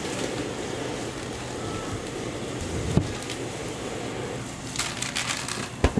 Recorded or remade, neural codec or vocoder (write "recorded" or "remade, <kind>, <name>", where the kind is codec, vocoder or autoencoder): recorded